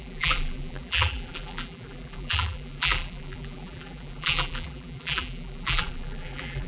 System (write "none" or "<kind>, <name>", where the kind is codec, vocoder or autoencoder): vocoder, BigVGAN v2